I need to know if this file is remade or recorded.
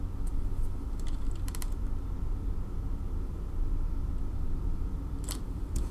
remade